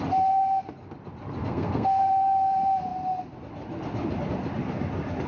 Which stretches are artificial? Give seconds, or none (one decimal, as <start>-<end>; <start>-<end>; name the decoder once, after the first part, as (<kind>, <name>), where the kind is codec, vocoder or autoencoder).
1.4-2.0 (codec, SNAC)